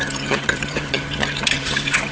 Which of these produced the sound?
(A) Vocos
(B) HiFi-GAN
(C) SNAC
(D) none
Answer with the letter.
B